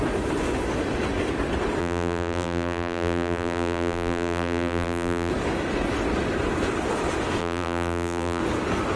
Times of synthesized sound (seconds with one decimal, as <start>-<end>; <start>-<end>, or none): 1.8-5.3; 7.4-8.4